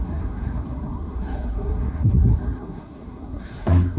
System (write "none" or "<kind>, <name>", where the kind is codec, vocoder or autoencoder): codec, SNAC